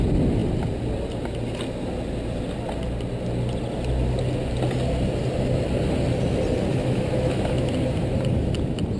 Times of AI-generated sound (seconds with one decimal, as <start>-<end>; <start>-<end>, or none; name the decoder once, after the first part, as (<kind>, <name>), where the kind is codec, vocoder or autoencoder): 6.7-7.7 (autoencoder, DAC-VAE)

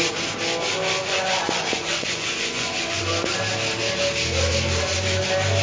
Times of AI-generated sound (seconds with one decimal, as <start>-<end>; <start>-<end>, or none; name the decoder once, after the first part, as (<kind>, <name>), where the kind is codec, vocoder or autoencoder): 1.0-3.0 (vocoder, Vocos)

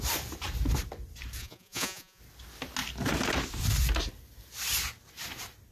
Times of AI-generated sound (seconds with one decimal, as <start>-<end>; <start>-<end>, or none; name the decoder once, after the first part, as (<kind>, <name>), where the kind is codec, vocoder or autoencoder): 1.4-2.2 (vocoder, Vocos)

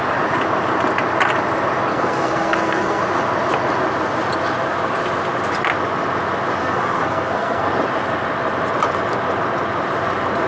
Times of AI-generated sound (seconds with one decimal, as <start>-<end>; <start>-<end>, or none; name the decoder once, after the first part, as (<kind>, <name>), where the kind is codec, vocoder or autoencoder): 1.9-3.0 (codec, SNAC); 6.6-7.7

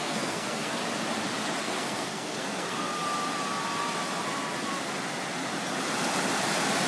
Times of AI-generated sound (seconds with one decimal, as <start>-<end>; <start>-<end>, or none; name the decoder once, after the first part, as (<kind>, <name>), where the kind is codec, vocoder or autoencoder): 0.0-0.8 (codec, SNAC); 1.6-2.9

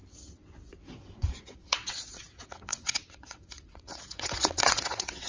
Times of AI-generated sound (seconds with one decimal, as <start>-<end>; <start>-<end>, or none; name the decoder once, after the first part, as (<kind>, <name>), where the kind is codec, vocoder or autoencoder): 0.0-5.3 (vocoder, WaveNeXt)

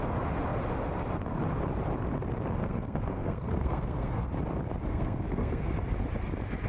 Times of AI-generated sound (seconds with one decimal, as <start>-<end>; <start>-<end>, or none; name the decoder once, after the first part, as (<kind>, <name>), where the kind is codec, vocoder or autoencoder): 2.6-4.3 (codec, SNAC); 4.9-5.7